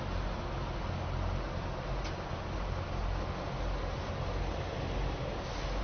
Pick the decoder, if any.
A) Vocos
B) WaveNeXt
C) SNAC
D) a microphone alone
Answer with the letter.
D